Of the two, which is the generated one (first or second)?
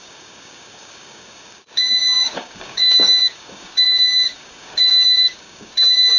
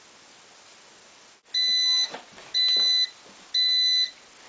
first